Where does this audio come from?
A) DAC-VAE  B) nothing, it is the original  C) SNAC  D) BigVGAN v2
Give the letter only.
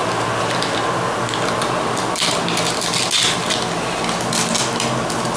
B